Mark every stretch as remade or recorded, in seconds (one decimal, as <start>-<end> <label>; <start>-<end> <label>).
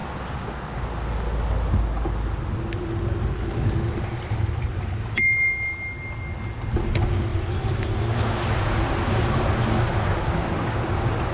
0.0-11.3 recorded